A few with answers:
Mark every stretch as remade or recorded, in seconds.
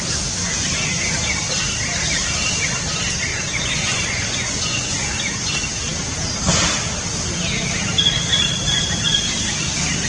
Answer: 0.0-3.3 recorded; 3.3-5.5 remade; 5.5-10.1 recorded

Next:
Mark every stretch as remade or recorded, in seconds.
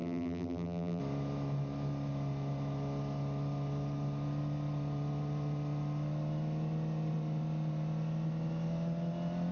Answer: 0.0-1.0 remade; 1.0-9.5 recorded